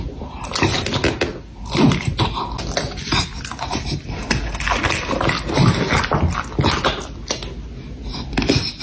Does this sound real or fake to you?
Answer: real